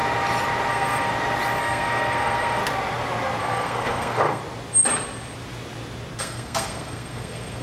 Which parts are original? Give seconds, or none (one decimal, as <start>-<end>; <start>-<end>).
0.0-0.7; 1.1-1.6; 2.6-3.4; 4.4-6.2